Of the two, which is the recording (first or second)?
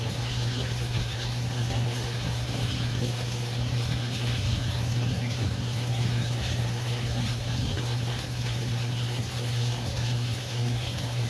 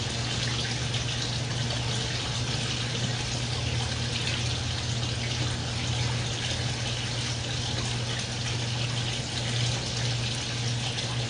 second